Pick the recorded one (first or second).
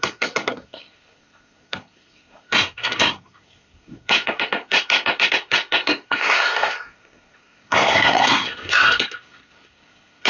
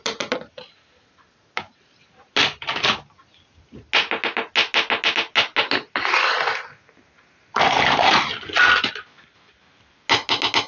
second